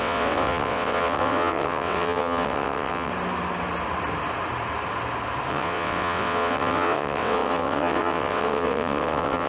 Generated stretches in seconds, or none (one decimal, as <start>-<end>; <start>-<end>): 0.0-3.1; 5.5-9.5